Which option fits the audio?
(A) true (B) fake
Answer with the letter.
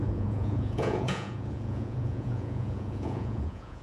B